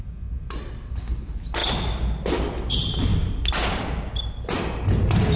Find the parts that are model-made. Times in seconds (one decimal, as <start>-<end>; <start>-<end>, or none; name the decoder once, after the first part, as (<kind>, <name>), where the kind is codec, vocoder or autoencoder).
none